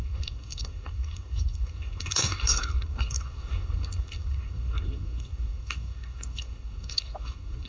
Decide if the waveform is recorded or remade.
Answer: remade